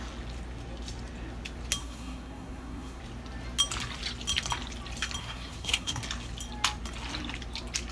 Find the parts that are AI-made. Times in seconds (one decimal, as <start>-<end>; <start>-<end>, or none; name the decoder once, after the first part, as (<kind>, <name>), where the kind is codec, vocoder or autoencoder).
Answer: 1.8-3.0 (codec, SNAC); 5.2-6.0